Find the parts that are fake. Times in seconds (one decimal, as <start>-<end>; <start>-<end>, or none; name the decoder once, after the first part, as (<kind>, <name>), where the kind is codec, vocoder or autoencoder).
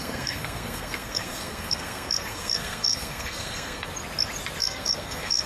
0.0-3.9 (codec, SNAC); 4.6-5.5